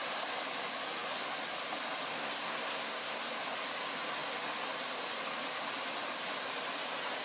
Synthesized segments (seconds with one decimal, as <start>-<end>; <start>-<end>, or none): 2.1-3.2